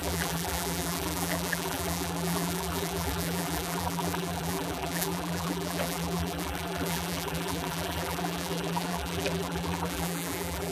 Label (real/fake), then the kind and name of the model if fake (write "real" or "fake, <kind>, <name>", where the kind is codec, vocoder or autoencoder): fake, vocoder, BigVGAN v2